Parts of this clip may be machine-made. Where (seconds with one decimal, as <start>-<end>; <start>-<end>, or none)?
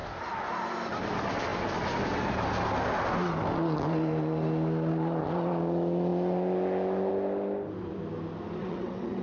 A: 8.6-9.2